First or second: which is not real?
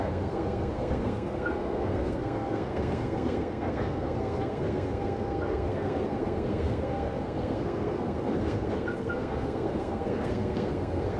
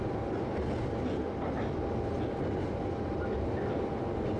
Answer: first